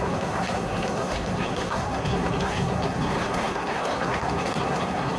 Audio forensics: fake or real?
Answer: fake